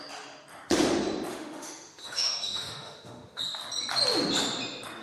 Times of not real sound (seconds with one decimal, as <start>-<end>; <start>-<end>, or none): 1.3-3.4

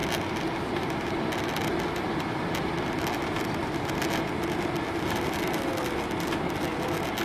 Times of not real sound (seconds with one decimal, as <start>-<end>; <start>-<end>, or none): none

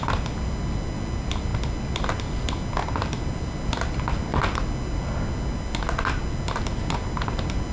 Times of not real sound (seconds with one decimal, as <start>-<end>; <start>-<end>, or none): none

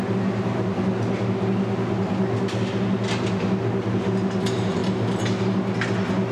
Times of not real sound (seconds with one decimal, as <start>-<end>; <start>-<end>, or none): none

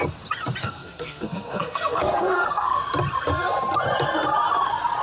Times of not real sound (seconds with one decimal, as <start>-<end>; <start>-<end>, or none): 0.6-2.8

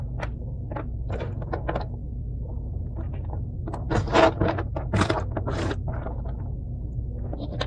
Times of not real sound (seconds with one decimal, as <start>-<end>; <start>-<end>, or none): none